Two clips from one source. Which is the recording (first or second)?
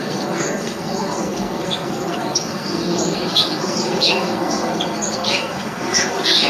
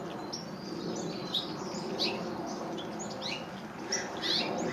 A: second